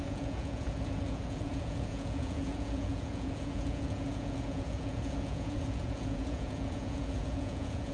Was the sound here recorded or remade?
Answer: remade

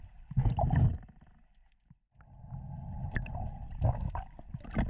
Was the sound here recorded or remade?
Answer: recorded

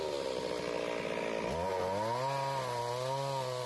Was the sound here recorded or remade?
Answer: recorded